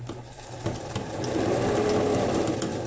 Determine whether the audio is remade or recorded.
recorded